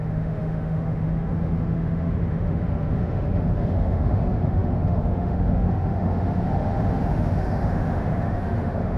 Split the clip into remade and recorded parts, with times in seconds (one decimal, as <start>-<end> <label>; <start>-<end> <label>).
0.0-9.0 remade